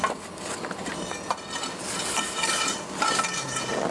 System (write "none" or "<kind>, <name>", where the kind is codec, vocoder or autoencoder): none